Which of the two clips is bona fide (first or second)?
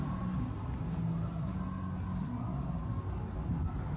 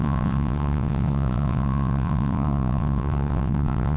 first